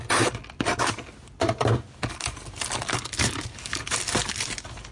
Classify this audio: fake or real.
real